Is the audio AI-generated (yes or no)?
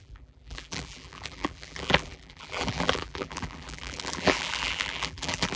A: yes